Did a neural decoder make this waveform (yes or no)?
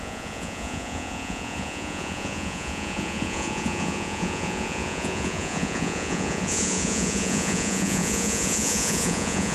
yes